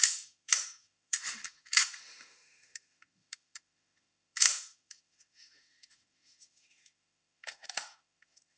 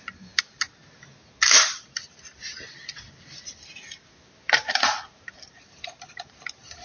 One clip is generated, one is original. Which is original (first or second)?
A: second